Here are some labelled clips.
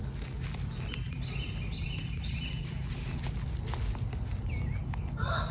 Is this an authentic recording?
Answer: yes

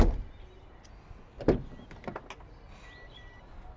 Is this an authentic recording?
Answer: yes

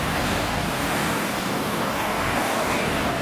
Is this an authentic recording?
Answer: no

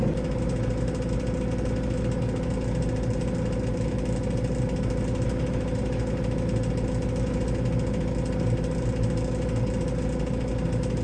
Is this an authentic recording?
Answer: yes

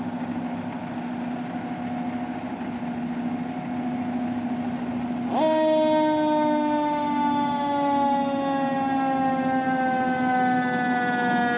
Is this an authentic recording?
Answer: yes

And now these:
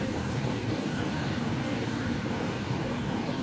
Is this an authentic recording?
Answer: no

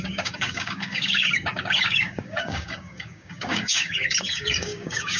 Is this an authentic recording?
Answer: no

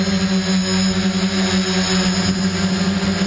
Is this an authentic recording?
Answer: yes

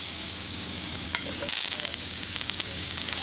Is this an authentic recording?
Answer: no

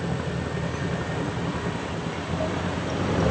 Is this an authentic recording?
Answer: yes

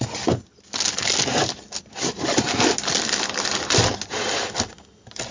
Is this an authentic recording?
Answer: yes